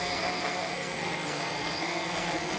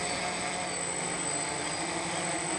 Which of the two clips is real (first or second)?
second